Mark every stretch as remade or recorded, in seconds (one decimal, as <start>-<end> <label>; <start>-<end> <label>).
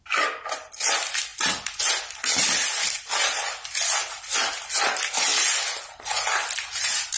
0.0-7.2 recorded